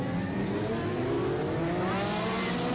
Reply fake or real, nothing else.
real